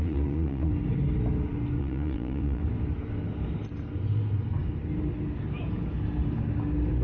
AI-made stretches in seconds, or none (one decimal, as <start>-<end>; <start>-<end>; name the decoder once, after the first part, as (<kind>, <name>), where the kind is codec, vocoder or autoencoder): 0.0-0.7 (vocoder, Vocos); 1.8-2.6